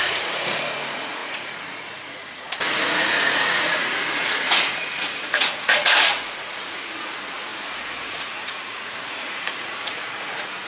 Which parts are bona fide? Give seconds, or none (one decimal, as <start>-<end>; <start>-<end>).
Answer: none